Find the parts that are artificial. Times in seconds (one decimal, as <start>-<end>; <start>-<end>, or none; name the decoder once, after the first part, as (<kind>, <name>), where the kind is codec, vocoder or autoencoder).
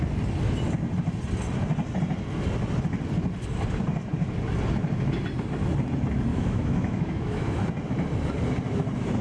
6.3-7.6 (autoencoder, DAC-VAE)